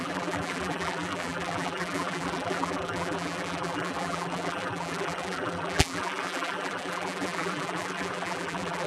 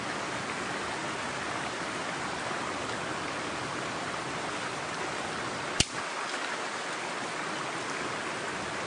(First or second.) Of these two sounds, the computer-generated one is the first